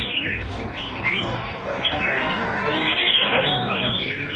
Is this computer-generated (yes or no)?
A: yes